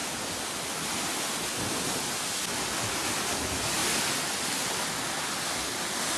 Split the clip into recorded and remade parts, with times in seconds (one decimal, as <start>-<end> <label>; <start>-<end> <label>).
0.0-6.2 recorded